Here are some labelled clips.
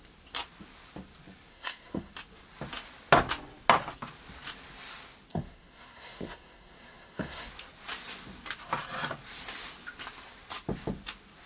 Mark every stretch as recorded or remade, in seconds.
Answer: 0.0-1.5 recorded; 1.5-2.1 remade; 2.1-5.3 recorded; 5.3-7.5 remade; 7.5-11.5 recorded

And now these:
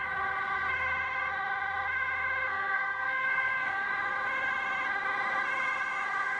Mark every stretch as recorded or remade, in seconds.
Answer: 0.0-2.5 recorded; 2.5-3.9 remade; 3.9-6.4 recorded

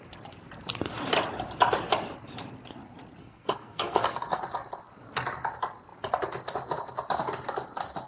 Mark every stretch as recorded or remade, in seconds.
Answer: 0.0-3.2 recorded; 3.2-4.4 remade; 4.4-8.1 recorded

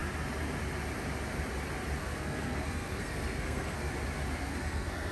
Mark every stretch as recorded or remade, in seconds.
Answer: 0.0-2.0 recorded; 2.0-3.9 remade; 3.9-4.3 recorded; 4.3-5.1 remade

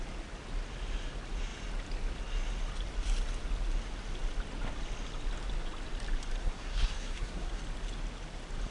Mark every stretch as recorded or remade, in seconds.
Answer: 0.0-6.4 recorded; 6.4-7.6 remade; 7.6-8.7 recorded

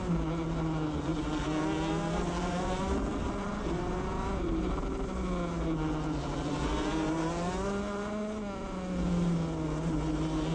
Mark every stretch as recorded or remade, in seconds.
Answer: 0.0-10.5 recorded